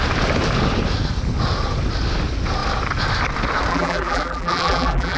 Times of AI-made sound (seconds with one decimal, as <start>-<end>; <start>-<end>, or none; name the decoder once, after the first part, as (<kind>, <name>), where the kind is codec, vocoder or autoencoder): 3.7-5.2 (vocoder, BigVGAN v2)